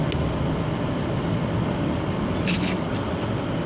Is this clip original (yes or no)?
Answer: yes